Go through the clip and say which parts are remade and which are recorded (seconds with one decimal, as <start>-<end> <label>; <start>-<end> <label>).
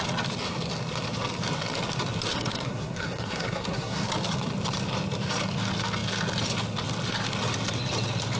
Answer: 0.0-2.3 recorded; 2.3-4.1 remade; 4.1-8.4 recorded